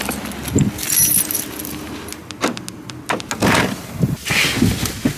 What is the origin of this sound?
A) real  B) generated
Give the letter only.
A